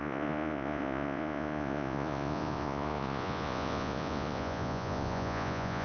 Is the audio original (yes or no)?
no